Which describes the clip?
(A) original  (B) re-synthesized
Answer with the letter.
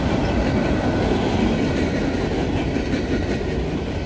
A